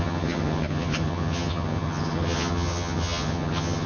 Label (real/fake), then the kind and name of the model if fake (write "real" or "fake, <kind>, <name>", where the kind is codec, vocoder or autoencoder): fake, vocoder, HiFi-GAN